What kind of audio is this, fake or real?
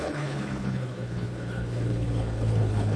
fake